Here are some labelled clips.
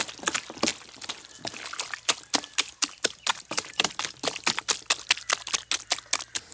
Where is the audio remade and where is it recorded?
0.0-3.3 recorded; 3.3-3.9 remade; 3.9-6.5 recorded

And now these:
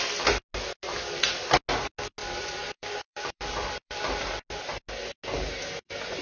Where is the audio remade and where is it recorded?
0.0-2.2 recorded; 2.2-4.3 remade; 4.3-6.2 recorded

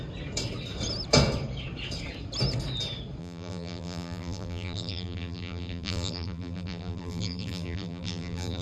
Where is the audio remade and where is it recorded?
0.0-3.2 recorded; 3.2-8.6 remade

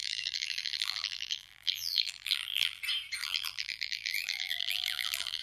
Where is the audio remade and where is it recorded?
0.0-2.8 remade; 2.8-3.2 recorded; 3.2-5.4 remade

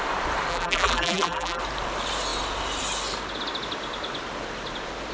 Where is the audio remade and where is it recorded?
0.0-0.5 recorded; 0.5-1.6 remade; 1.6-5.1 recorded

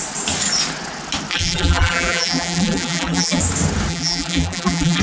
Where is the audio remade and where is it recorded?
0.0-1.3 recorded; 1.3-3.4 remade; 3.4-3.9 recorded; 3.9-5.0 remade

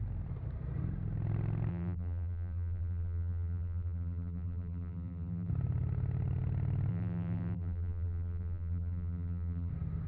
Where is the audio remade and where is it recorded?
0.0-1.7 recorded; 1.7-5.5 remade; 5.5-6.9 recorded; 6.9-9.7 remade; 9.7-10.1 recorded